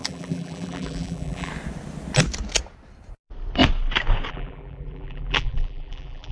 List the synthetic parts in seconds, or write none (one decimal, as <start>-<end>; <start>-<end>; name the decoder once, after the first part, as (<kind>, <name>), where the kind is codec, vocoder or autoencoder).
0.0-1.5 (vocoder, BigVGAN v2); 4.3-6.3